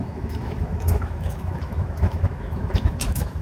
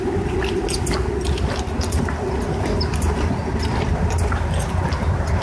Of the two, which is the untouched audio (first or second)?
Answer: second